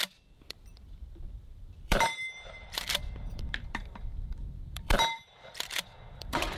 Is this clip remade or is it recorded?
remade